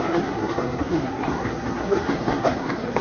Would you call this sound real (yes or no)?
no